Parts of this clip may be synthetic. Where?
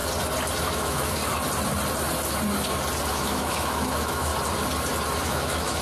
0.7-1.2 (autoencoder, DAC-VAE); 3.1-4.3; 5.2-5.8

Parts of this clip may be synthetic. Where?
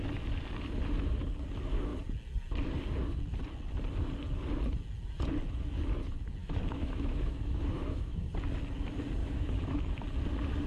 6.4-8.3 (autoencoder, DAC-VAE); 9.2-9.8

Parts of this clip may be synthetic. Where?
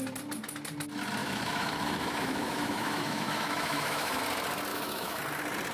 1.2-4.2 (autoencoder, DAC-VAE); 4.7-5.2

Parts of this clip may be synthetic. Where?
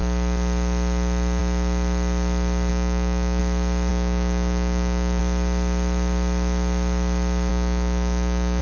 2.7-3.4 (autoencoder, DAC-VAE); 3.9-5.2; 7.5-8.6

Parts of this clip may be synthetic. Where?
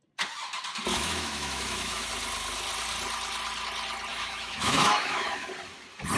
0.9-2.1 (autoencoder, DAC-VAE); 4.1-5.5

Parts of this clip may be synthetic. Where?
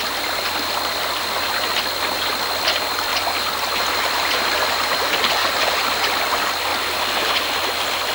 none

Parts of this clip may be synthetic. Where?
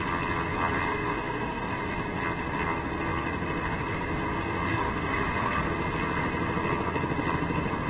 0.9-1.8 (autoencoder, DAC-VAE); 4.7-5.7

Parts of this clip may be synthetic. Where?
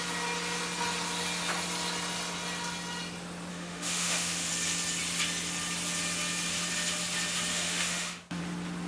3.5-4.5 (autoencoder, DAC-VAE); 7.5-8.4